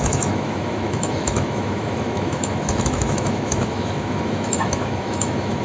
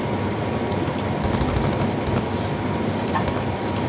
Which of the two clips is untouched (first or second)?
second